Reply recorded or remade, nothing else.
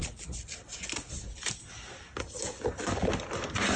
recorded